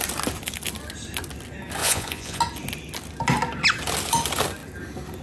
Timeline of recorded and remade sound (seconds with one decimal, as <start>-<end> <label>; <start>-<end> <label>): 0.0-1.8 recorded; 1.8-2.4 remade; 2.4-5.2 recorded